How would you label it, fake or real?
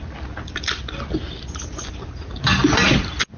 real